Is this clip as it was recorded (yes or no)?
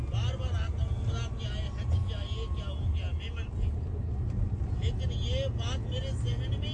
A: yes